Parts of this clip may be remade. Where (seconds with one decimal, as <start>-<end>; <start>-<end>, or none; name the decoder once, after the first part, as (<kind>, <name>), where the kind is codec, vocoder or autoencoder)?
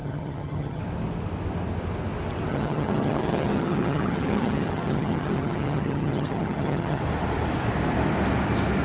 0.0-0.8 (vocoder, HiFi-GAN); 2.5-7.0